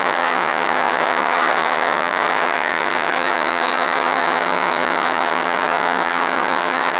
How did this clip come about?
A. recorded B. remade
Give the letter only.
B